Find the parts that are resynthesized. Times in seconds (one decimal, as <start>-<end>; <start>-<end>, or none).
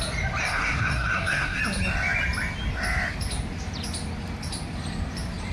0.4-1.6